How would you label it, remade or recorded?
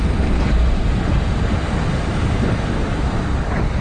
recorded